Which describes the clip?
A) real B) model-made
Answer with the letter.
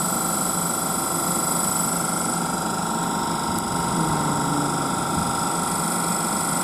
A